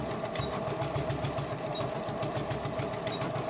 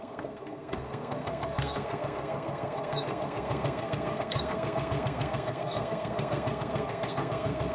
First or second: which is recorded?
first